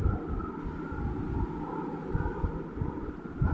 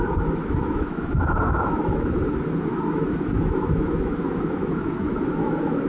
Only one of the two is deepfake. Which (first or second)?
second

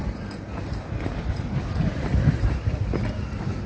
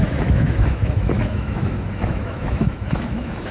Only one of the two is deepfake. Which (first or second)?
second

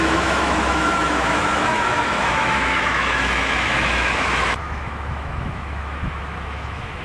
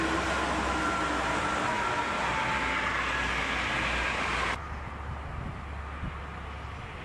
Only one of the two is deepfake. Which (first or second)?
first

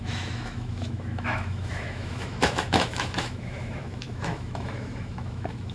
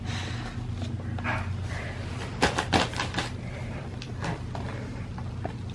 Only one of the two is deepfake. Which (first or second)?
first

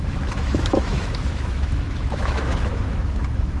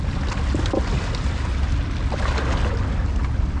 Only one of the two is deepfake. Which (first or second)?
first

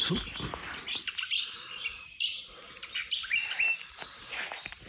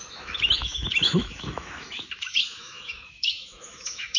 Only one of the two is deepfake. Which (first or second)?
second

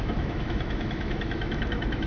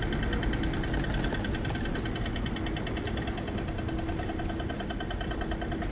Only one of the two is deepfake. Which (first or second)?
first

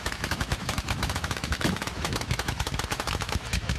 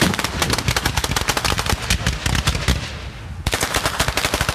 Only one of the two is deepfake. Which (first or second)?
first